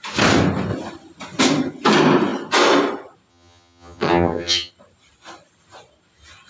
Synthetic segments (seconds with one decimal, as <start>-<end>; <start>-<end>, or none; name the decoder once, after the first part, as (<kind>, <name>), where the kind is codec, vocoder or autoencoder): 3.3-4.7 (vocoder, HiFi-GAN)